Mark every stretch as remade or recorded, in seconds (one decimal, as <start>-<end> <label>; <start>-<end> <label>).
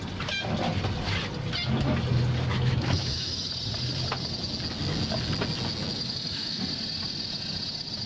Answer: 0.0-2.5 recorded; 2.5-3.5 remade; 3.5-5.8 recorded; 5.8-6.6 remade; 6.6-8.1 recorded